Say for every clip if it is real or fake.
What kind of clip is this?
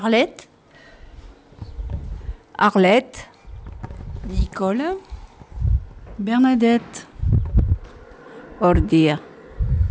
real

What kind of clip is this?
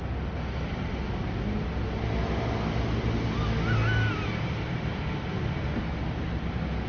real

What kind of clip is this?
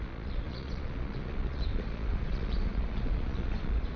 fake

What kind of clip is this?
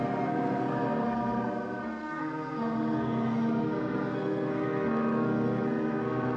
fake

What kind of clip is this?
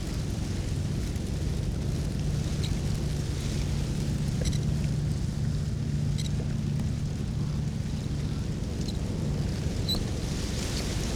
real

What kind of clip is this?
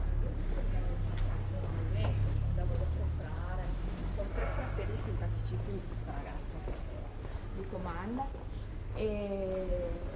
real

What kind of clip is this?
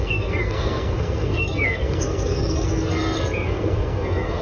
fake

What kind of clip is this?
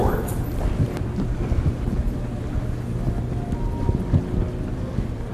real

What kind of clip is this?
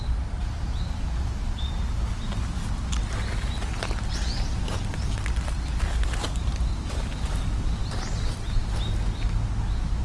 real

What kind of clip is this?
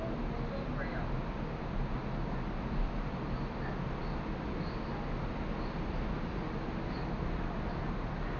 real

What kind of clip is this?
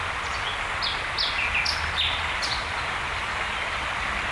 real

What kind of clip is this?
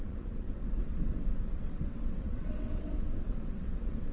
fake